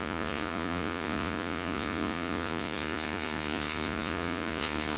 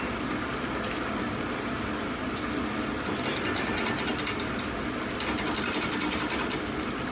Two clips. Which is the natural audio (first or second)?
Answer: second